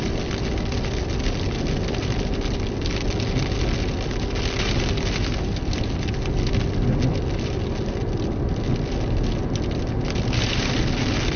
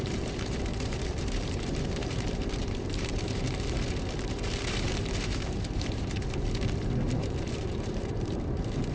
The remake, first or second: second